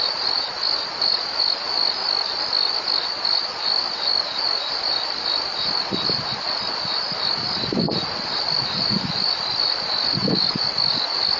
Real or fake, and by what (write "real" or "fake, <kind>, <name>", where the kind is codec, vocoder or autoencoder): real